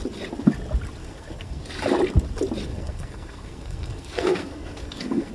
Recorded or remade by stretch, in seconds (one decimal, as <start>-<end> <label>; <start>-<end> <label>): 0.0-1.0 recorded; 1.0-1.6 remade; 1.6-2.7 recorded; 2.7-5.3 remade